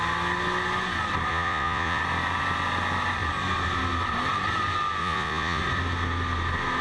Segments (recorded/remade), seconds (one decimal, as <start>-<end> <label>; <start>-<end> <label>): 0.0-1.3 recorded; 1.3-2.0 remade; 2.0-5.0 recorded; 5.0-5.6 remade; 5.6-6.8 recorded